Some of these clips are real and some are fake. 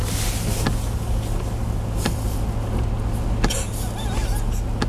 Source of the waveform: real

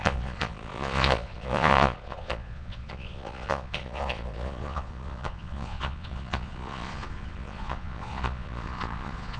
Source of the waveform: fake